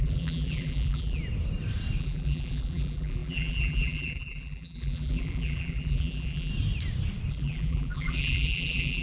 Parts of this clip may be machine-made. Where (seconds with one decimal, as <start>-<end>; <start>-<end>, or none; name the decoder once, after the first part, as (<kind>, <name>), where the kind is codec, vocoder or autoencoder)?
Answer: 0.0-1.2 (vocoder, BigVGAN v2); 2.0-6.5; 7.3-9.0